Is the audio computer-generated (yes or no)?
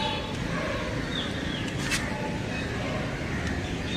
no